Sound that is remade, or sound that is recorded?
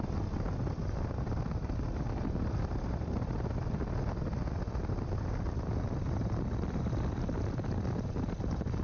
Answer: recorded